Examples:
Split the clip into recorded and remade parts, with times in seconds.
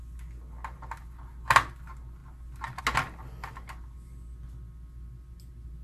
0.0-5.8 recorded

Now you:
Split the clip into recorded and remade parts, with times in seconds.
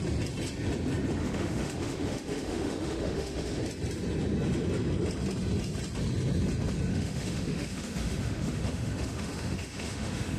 0.0-1.2 recorded; 1.2-3.6 remade; 3.6-6.9 recorded; 6.9-10.4 remade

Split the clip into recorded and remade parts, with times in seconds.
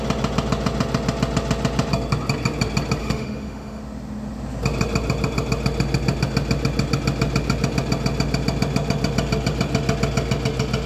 0.0-3.0 recorded; 3.0-3.8 remade; 3.8-10.9 recorded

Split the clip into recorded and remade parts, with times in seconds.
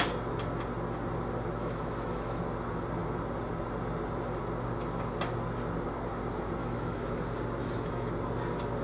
0.0-1.6 recorded; 1.6-2.4 remade; 2.4-6.6 recorded; 6.6-7.1 remade; 7.1-7.6 recorded; 7.6-8.1 remade; 8.1-8.8 recorded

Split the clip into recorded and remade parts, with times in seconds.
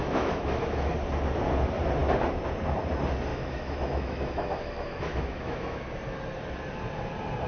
0.0-0.9 remade; 0.9-3.3 recorded; 3.3-5.8 remade; 5.8-7.5 recorded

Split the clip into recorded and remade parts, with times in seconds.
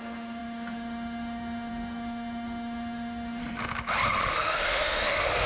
0.0-3.4 remade; 3.4-4.3 recorded; 4.3-5.5 remade